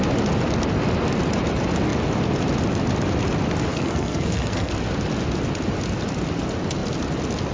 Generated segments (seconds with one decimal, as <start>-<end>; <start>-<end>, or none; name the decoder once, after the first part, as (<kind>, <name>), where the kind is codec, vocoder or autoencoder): 3.7-4.7 (codec, SNAC)